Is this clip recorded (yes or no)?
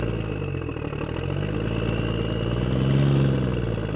yes